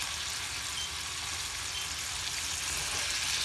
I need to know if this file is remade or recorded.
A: recorded